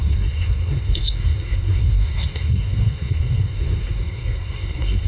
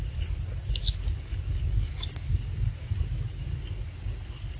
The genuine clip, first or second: second